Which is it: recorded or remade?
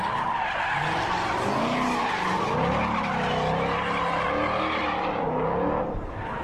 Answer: recorded